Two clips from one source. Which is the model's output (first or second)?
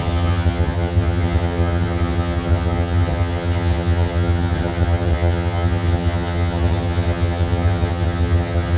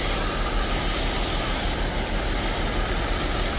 first